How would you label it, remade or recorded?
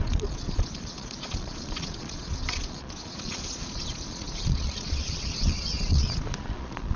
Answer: remade